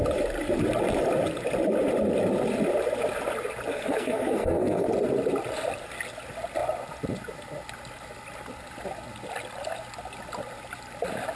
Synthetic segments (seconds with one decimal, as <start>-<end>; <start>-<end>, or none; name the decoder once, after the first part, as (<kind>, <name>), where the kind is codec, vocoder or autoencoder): 3.7-4.9 (codec, SNAC)